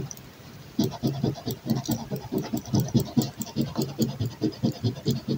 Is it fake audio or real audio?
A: fake